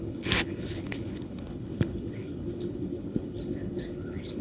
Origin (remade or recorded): remade